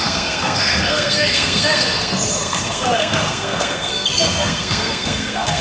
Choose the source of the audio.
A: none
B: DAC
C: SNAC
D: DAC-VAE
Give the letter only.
C